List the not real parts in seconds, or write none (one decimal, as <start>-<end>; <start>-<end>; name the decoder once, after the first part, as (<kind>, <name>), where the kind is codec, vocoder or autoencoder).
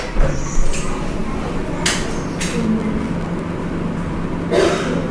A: none